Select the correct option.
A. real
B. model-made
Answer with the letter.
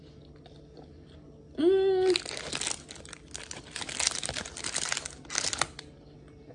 A